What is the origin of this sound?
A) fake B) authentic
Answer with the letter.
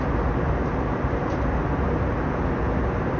B